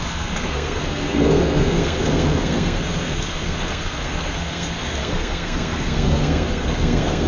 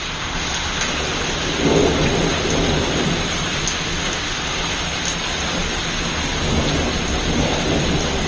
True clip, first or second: second